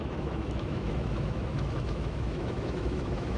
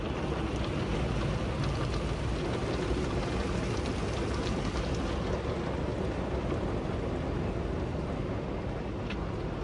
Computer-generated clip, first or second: first